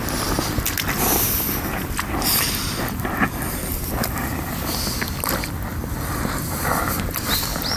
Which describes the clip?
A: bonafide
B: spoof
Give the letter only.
A